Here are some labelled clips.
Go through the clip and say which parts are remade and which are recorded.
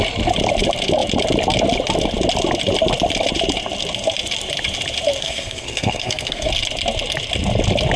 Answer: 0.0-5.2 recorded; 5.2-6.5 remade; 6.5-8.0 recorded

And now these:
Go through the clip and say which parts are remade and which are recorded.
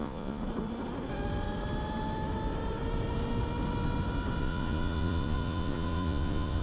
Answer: 0.0-0.4 remade; 0.4-4.4 recorded; 4.4-6.6 remade